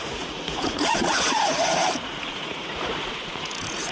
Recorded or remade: remade